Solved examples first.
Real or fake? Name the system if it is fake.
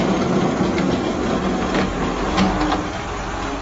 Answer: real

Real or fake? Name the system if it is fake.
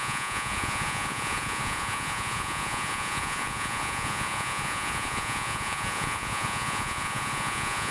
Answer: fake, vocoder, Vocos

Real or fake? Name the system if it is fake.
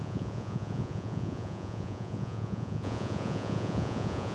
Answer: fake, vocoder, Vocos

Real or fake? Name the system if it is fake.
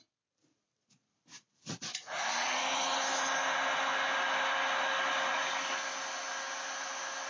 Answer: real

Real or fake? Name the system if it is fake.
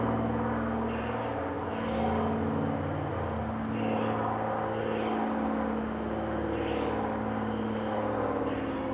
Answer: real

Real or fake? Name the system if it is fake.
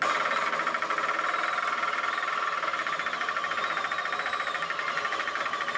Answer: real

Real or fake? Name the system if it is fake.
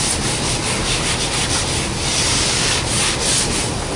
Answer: real